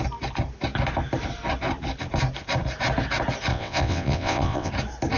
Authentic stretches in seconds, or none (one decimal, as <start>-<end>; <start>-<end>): 0.0-3.5; 4.7-5.2